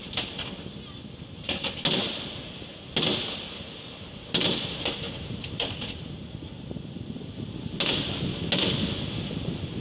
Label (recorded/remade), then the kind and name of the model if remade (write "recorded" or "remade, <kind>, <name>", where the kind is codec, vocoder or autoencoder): recorded